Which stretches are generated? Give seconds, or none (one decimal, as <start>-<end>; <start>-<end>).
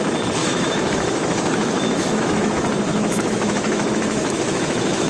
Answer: 0.4-2.5; 2.9-5.1